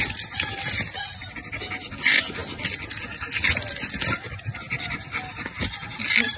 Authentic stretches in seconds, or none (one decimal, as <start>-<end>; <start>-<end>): 0.0-6.4